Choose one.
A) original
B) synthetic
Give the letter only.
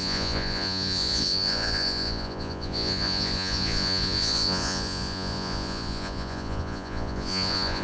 B